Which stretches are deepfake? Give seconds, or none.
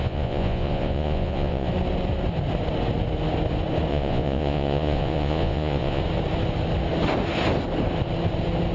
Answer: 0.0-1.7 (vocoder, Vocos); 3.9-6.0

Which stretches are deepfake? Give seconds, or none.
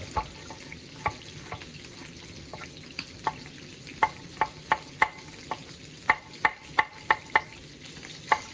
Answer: none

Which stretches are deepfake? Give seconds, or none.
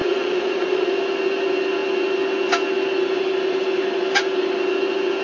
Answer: 0.0-0.9 (vocoder, Vocos)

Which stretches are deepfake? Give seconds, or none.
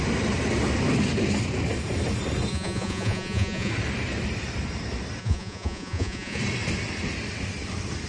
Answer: 2.5-3.7 (vocoder, Vocos); 5.2-6.4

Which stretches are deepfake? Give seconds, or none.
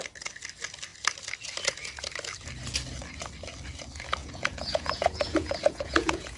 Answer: 4.2-6.4 (vocoder, Vocos)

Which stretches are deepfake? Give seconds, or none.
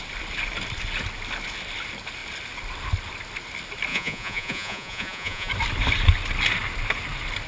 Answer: 3.9-5.5 (vocoder, Vocos)